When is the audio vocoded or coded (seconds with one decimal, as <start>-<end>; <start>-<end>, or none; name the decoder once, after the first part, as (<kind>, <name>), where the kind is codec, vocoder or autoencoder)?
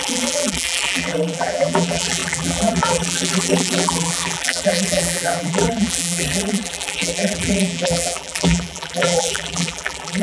0.0-10.2 (vocoder, BigVGAN v2)